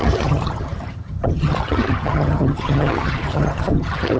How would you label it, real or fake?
fake